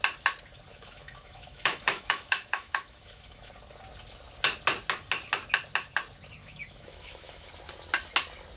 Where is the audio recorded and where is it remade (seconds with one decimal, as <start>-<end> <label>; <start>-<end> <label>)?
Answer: 0.0-0.7 recorded; 0.7-3.5 remade; 3.5-6.4 recorded; 6.4-7.5 remade; 7.5-8.6 recorded